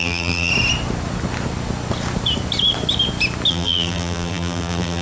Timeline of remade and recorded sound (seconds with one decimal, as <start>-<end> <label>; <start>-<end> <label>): 0.0-0.5 remade; 0.5-3.5 recorded; 3.5-5.0 remade